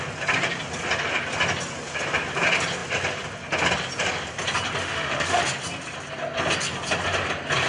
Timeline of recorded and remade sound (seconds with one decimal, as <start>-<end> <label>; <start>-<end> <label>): 0.0-4.8 recorded; 4.8-5.4 remade; 5.4-7.7 recorded